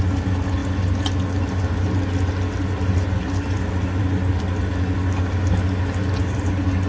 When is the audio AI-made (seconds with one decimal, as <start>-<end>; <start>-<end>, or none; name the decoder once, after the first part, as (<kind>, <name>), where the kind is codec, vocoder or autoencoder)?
none